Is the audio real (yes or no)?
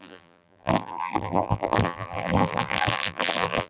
no